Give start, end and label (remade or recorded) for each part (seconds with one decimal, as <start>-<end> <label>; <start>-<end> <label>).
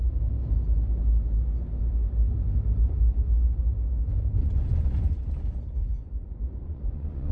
0.0-4.4 recorded; 4.4-5.2 remade; 5.2-5.8 recorded; 5.8-7.3 remade